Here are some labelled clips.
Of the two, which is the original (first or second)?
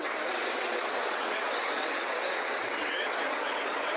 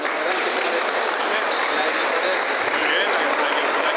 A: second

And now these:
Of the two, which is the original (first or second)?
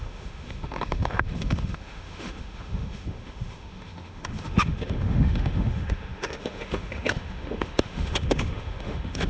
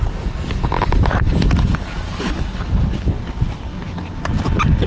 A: second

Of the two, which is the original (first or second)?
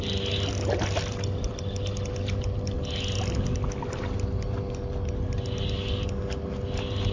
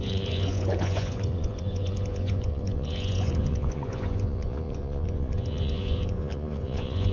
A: first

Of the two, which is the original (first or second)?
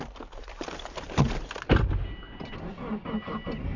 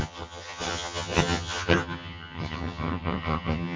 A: first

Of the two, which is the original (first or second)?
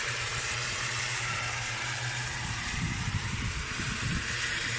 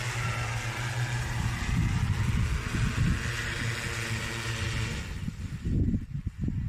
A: second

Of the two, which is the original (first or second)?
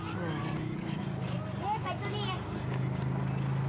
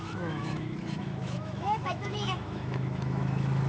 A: first